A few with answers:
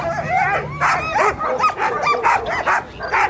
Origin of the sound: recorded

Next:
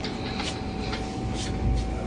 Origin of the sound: recorded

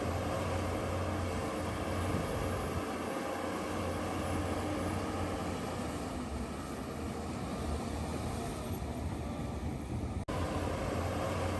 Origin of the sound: recorded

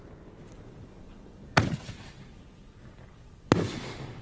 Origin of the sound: recorded